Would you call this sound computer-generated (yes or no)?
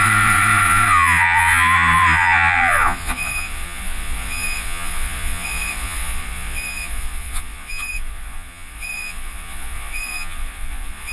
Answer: yes